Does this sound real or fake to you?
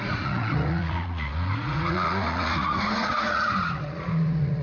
fake